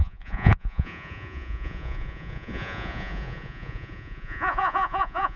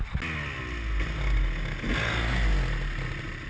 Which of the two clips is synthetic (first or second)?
first